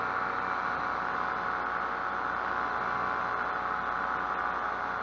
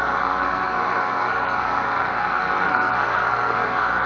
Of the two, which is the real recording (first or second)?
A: first